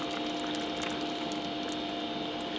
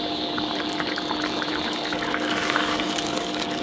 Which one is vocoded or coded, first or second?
second